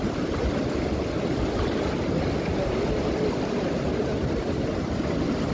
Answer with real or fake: real